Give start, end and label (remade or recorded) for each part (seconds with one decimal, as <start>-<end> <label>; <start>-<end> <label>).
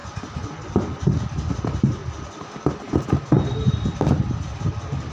0.0-5.1 recorded